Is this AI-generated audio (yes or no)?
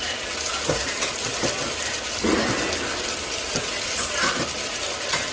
no